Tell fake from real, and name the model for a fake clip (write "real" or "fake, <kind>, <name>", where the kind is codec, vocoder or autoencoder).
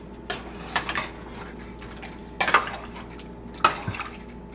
real